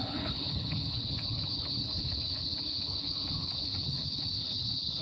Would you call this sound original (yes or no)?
no